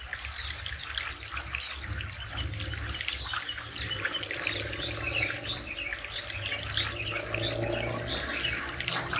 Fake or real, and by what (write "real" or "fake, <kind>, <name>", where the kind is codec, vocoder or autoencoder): real